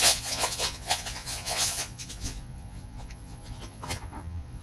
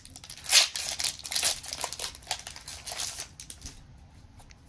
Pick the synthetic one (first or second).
first